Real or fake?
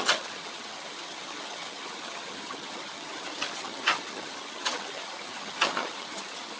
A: fake